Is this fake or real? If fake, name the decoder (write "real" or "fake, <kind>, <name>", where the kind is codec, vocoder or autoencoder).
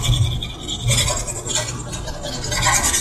real